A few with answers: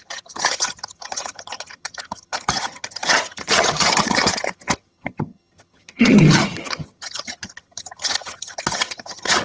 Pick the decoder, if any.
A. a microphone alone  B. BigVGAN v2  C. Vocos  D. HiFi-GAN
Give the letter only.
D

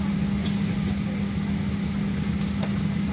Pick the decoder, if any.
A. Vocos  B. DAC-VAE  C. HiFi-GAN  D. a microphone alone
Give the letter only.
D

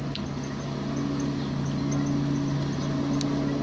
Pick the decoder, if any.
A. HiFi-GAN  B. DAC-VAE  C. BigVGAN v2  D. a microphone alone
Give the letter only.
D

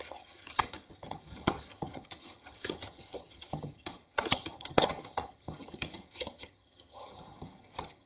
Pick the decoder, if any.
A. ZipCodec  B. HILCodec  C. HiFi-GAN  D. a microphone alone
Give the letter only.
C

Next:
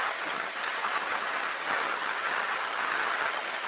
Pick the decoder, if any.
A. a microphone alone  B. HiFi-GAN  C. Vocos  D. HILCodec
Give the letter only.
B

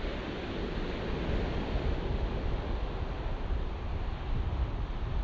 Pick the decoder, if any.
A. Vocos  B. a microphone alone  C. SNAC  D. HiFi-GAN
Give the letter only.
B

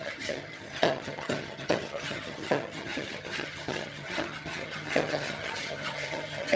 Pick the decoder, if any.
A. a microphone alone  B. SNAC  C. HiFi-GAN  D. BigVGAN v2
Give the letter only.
C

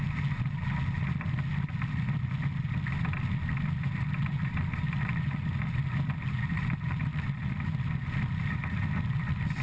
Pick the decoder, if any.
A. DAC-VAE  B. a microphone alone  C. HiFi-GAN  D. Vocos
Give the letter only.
B